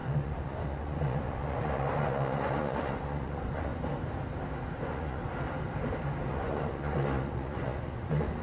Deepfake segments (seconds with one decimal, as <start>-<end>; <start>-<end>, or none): 0.0-3.7; 4.8-5.2; 6.3-8.4